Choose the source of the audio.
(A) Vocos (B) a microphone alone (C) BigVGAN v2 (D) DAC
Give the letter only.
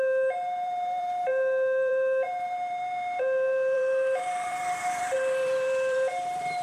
C